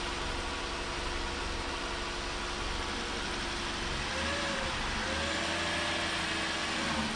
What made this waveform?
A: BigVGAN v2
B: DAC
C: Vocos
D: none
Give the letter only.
D